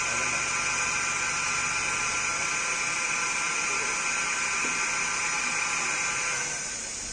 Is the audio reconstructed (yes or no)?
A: no